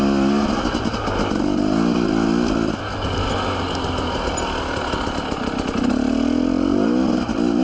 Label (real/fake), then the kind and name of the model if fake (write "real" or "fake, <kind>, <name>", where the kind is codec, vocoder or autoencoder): real